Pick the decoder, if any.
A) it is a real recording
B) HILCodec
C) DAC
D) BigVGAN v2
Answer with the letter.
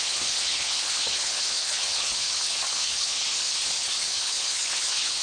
B